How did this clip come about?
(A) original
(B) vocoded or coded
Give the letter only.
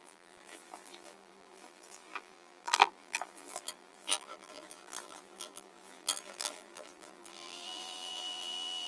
B